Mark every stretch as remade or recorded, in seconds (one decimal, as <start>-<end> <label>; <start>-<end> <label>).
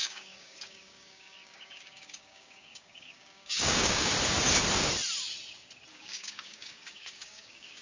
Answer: 0.0-4.1 remade; 4.1-5.9 recorded; 5.9-7.8 remade